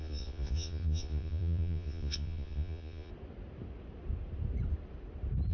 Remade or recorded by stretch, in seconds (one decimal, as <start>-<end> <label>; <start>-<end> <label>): 0.0-3.1 remade; 3.1-5.5 recorded